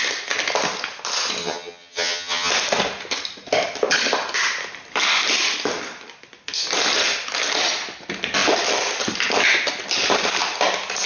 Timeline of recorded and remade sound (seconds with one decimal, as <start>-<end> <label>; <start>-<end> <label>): 0.0-1.4 recorded; 1.4-2.5 remade; 2.5-11.1 recorded